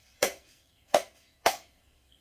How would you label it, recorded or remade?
remade